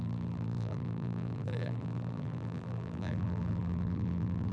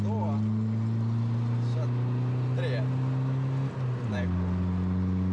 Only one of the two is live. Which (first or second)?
second